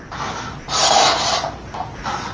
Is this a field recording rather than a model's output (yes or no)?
yes